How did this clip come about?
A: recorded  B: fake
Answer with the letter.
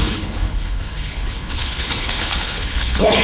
B